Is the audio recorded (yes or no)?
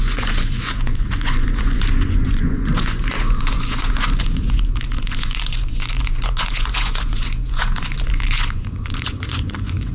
no